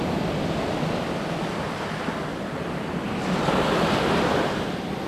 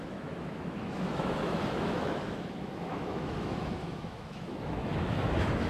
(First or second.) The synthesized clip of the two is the second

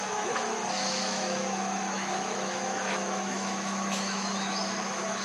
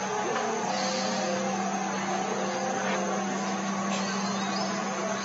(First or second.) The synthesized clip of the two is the first